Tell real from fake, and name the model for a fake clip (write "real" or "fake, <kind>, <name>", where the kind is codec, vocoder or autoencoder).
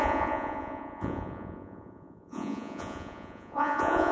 fake, vocoder, Vocos